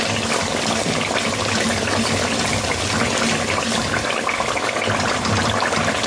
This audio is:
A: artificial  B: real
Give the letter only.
B